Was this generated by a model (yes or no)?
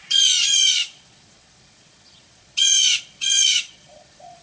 yes